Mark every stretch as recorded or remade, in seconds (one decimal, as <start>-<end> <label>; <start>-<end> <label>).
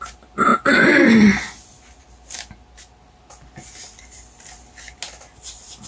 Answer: 0.0-5.9 recorded